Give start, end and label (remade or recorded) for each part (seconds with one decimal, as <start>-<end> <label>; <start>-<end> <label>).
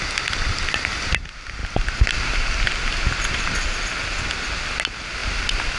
0.0-5.8 recorded